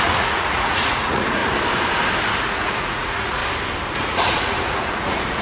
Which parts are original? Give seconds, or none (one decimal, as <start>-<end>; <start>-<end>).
1.4-2.4; 3.4-3.9